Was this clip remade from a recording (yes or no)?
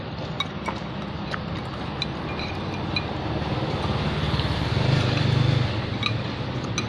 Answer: no